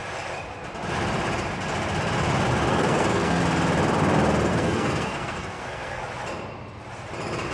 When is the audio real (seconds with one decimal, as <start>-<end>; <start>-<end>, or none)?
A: 0.0-2.7; 3.4-4.5; 6.0-7.5